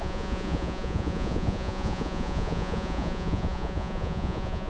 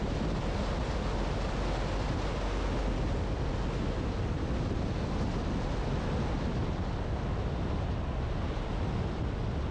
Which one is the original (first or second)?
second